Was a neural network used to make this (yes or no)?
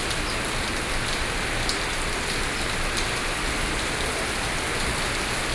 no